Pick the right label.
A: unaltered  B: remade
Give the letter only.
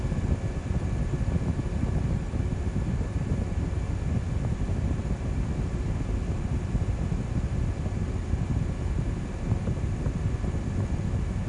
A